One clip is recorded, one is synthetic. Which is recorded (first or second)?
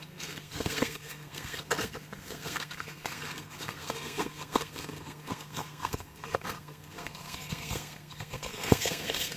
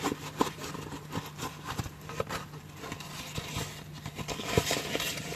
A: second